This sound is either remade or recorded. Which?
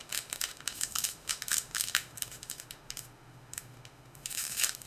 remade